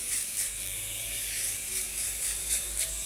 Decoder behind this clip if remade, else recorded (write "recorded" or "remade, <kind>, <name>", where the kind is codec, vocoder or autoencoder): remade, codec, DAC